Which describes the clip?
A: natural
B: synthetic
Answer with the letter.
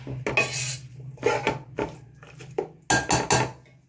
A